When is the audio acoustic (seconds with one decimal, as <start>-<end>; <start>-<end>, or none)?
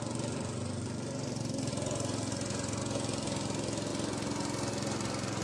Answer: 0.0-1.7; 2.8-5.4